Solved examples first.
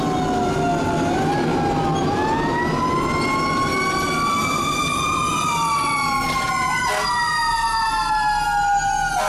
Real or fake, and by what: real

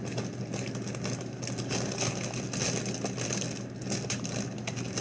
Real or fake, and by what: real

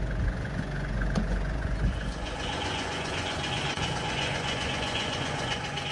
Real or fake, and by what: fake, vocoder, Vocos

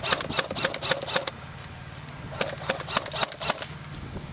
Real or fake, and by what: real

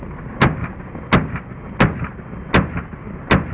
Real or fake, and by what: real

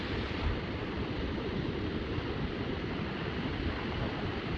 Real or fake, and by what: fake, vocoder, BigVGAN v2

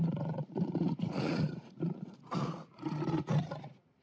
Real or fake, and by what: fake, vocoder, Vocos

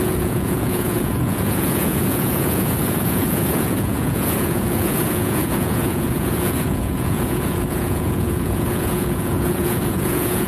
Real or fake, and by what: fake, vocoder, Vocos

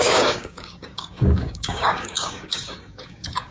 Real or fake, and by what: fake, codec, DAC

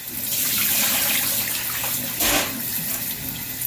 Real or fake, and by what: real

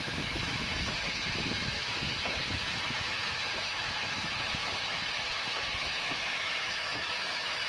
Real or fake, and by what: fake, autoencoder, DAC-VAE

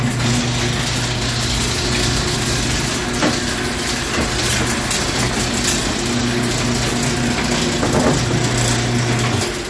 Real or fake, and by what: real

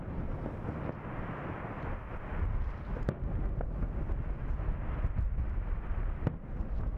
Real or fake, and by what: real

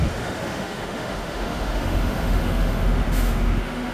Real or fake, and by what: fake, autoencoder, DAC-VAE